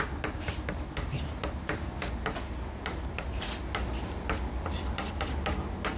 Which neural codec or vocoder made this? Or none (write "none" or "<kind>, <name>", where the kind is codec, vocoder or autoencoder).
none